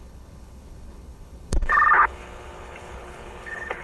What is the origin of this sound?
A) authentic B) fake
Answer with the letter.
B